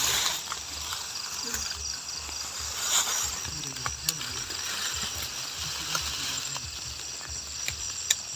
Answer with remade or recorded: recorded